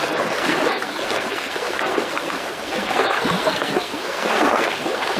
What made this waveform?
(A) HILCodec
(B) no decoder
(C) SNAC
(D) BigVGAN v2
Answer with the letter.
C